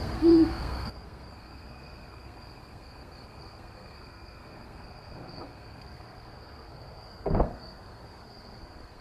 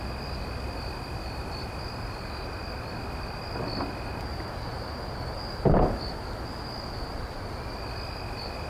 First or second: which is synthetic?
first